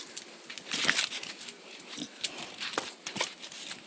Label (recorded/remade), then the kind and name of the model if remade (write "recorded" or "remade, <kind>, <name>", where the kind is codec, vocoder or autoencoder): recorded